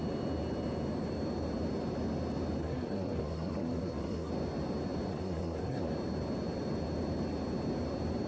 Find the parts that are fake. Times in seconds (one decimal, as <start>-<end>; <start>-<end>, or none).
2.6-4.3; 5.1-5.9